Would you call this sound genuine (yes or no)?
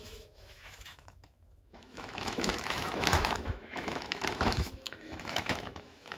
no